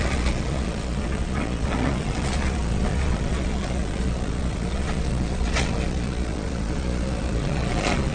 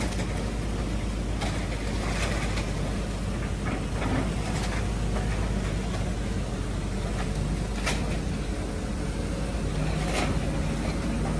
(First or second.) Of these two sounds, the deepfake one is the first